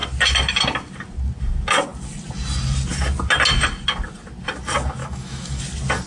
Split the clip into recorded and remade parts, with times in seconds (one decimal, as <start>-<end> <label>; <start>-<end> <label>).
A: 0.0-5.0 recorded; 5.0-5.6 remade; 5.6-6.1 recorded